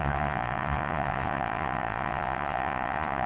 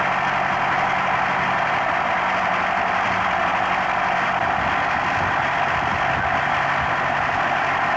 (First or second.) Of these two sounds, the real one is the second